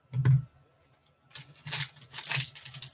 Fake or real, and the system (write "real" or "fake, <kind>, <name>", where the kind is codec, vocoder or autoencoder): real